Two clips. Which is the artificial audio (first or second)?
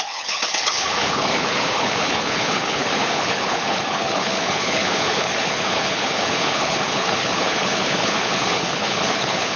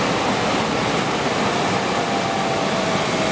first